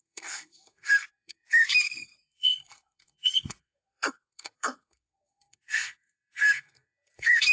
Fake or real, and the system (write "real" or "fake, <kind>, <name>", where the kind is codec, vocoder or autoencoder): fake, codec, SNAC